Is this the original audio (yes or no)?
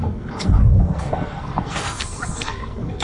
no